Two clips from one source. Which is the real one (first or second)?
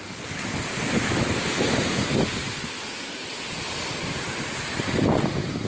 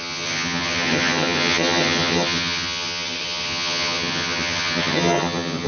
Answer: first